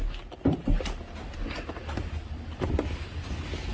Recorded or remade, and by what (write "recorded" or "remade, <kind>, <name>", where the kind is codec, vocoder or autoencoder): recorded